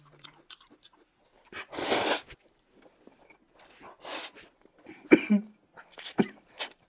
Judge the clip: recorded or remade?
recorded